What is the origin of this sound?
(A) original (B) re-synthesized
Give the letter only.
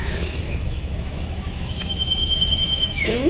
B